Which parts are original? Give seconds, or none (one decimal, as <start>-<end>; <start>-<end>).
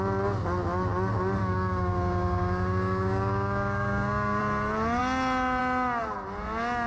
0.0-1.4; 4.4-6.9